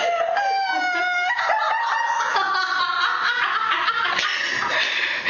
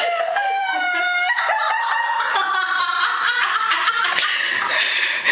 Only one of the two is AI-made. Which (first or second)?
second